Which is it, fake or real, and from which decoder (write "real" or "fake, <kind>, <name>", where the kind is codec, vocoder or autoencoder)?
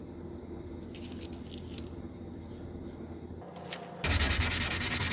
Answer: real